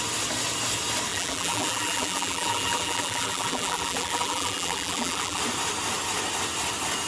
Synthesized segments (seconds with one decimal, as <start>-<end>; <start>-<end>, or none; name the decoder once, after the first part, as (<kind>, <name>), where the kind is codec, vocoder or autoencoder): 1.1-5.4 (vocoder, BigVGAN v2)